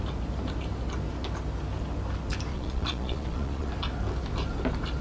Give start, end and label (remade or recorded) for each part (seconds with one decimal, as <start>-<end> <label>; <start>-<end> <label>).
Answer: 0.0-2.5 recorded; 2.5-3.7 remade; 3.7-5.0 recorded